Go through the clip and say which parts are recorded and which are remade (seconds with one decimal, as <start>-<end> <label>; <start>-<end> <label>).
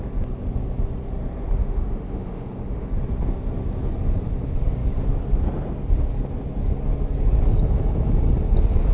0.0-1.6 recorded; 1.6-2.9 remade; 2.9-8.9 recorded